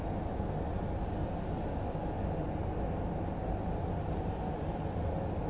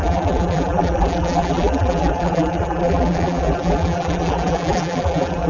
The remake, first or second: second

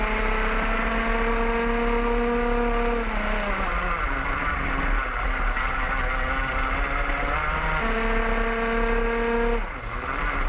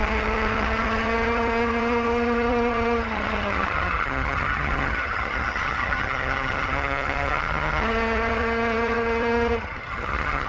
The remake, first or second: second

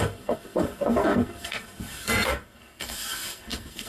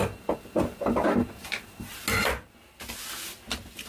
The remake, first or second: first